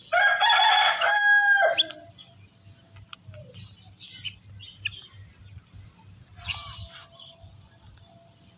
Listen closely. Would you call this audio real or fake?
real